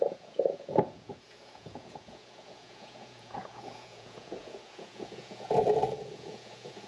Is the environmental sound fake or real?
fake